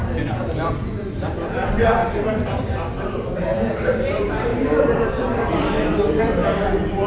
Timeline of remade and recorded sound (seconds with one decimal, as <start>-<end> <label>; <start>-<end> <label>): 0.0-2.0 remade; 2.0-2.6 recorded; 2.6-6.4 remade; 6.4-7.1 recorded